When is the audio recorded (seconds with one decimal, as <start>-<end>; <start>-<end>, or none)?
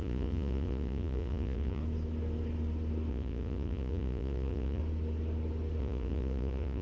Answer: 1.8-3.1; 4.8-5.8